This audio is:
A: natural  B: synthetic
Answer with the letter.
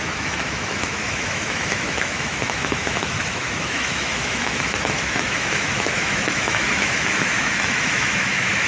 B